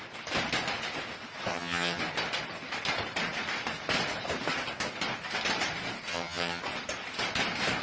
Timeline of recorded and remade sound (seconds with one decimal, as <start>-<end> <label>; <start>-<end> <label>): 0.0-1.5 recorded; 1.5-2.0 remade; 2.0-6.1 recorded; 6.1-6.6 remade; 6.6-7.8 recorded